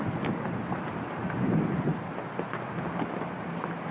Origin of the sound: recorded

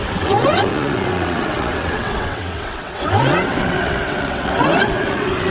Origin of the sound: remade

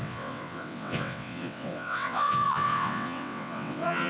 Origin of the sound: remade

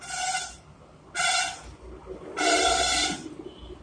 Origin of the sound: recorded